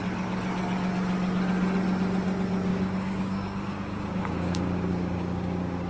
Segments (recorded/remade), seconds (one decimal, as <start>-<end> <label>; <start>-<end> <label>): 0.0-2.7 recorded; 2.7-5.9 remade